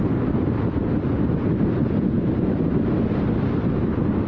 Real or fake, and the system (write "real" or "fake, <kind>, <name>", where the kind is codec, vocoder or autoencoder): real